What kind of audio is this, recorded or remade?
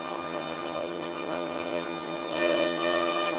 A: remade